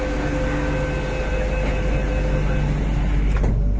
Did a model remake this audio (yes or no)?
no